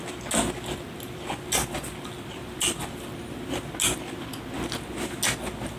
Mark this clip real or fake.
real